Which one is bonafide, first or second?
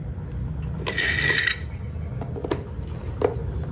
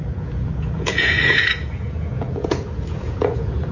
first